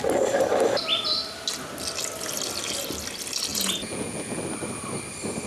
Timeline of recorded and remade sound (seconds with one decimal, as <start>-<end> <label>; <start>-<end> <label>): 0.0-3.5 recorded; 3.5-4.4 remade; 4.4-5.5 recorded